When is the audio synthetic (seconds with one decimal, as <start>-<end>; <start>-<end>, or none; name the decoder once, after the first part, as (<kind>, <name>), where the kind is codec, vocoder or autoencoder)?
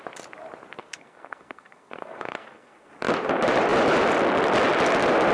0.8-2.9 (codec, SNAC)